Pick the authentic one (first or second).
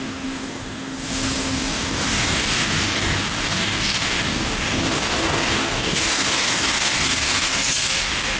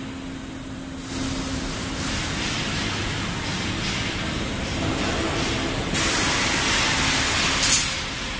second